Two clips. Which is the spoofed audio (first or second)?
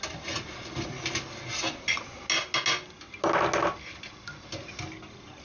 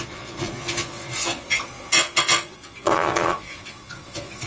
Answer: second